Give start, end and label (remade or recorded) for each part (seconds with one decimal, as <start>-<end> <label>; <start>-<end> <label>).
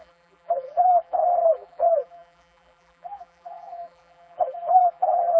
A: 0.0-5.4 remade